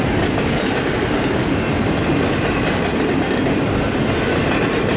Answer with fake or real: real